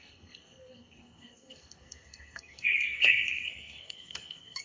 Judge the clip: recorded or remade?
remade